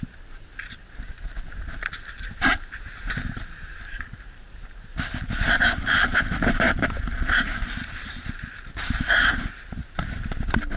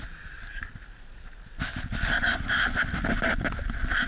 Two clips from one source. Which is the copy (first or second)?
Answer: first